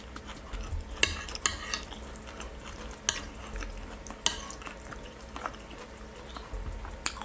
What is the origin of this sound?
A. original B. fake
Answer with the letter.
A